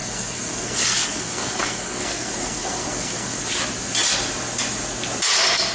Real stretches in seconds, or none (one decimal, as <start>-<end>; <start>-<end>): 3.4-5.7